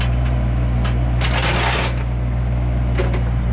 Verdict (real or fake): real